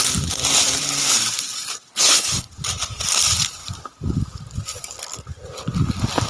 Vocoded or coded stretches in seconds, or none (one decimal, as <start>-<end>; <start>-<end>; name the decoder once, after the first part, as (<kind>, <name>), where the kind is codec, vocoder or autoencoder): 1.9-2.5 (codec, HILCodec)